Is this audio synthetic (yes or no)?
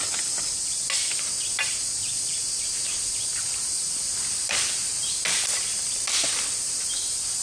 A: no